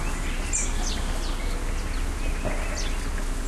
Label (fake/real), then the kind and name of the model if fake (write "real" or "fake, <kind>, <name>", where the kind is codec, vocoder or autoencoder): real